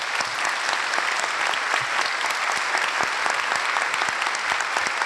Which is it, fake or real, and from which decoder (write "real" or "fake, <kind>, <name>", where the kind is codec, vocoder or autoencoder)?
real